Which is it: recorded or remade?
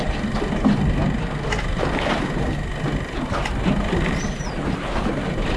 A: recorded